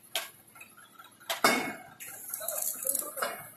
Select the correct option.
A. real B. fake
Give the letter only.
A